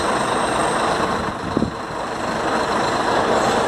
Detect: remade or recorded recorded